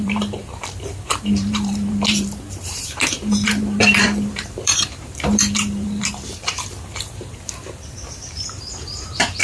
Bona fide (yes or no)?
no